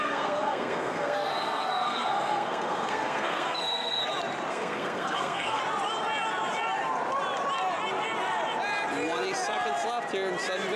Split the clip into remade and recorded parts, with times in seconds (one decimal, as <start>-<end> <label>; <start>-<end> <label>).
0.0-4.0 remade; 4.0-4.5 recorded; 4.5-5.6 remade; 5.6-10.8 recorded